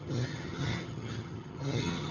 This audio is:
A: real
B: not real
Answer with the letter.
B